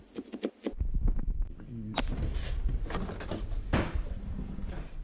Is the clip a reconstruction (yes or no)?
no